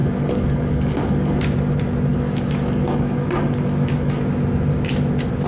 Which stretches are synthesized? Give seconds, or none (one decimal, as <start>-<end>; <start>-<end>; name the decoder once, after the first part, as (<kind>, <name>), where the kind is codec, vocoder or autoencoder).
0.0-1.4 (codec, DAC); 2.1-4.2